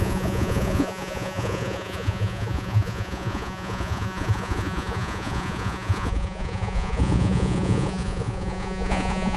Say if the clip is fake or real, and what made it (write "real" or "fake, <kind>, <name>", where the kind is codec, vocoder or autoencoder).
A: fake, vocoder, Vocos